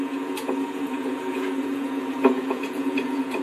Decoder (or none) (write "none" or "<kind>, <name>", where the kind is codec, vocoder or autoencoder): vocoder, Vocos